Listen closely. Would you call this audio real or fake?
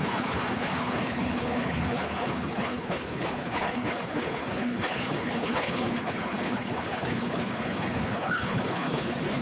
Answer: fake